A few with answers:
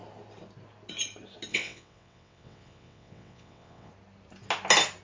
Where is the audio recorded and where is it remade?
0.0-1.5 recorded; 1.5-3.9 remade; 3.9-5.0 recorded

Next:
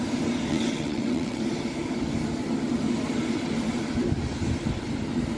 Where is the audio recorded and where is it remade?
0.0-0.5 recorded; 0.5-1.4 remade; 1.4-5.4 recorded

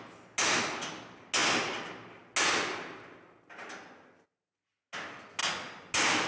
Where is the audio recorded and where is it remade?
0.0-6.3 recorded